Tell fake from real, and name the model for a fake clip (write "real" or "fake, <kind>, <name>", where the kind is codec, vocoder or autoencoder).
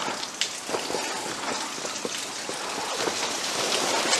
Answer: real